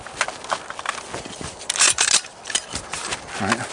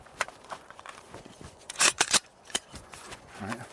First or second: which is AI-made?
second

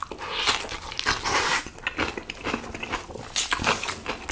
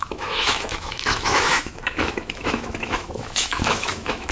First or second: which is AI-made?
second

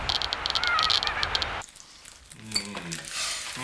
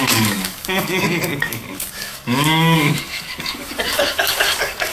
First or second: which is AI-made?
second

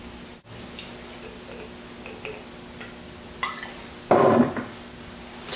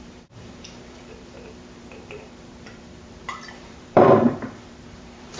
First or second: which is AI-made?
second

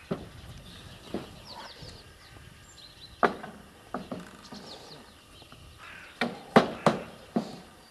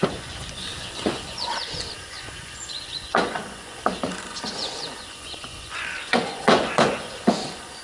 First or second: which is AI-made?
second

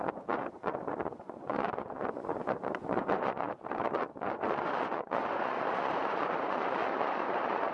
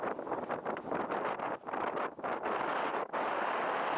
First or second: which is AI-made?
first